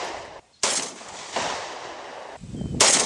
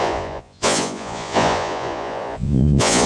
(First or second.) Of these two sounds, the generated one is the second